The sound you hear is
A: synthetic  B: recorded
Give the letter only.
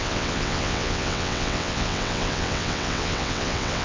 A